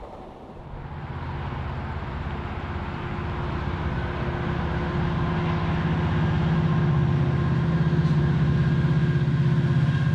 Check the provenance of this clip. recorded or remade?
recorded